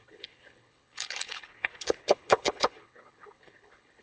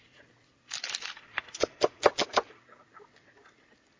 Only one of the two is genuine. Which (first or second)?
second